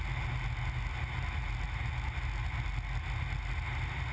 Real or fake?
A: real